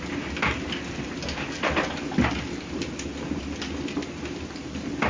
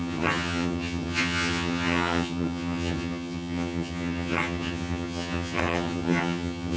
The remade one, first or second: second